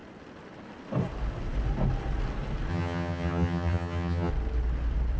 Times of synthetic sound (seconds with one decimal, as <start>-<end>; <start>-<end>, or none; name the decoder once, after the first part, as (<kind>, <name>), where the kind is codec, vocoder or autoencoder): 2.7-4.3 (vocoder, HiFi-GAN)